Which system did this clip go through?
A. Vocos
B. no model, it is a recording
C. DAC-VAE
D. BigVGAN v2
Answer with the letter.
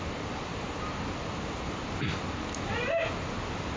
B